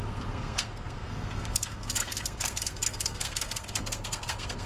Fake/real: fake